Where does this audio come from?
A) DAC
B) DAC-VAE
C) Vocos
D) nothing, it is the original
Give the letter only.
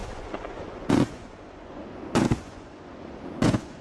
C